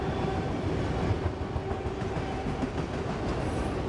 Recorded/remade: recorded